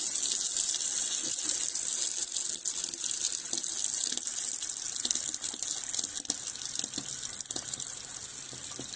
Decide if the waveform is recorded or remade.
recorded